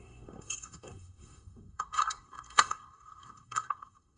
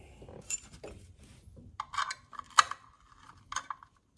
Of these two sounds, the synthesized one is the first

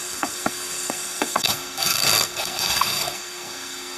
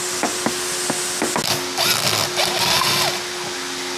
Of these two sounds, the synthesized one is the first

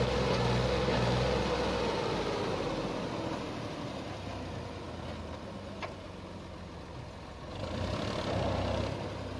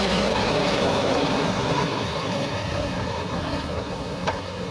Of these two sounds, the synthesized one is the second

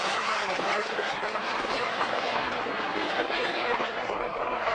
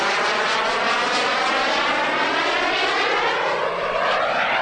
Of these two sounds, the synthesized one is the first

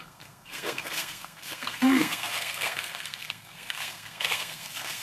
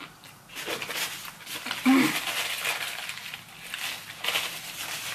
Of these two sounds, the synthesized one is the first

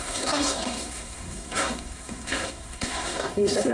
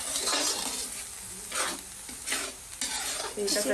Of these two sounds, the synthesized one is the first